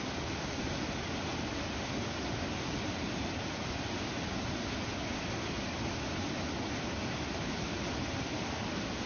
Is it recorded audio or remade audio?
recorded